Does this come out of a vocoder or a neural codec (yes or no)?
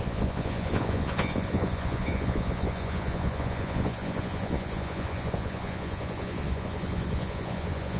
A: yes